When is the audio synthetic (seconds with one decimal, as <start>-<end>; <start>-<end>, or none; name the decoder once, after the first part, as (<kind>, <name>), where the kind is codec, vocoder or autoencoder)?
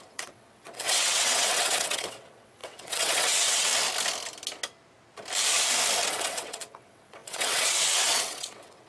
0.0-3.7 (vocoder, WaveNeXt); 6.1-8.9